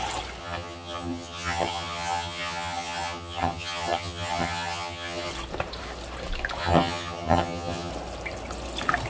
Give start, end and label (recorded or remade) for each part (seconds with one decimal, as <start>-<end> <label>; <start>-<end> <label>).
0.0-0.4 recorded; 0.4-5.3 remade; 5.3-6.6 recorded; 6.6-7.9 remade; 7.9-9.1 recorded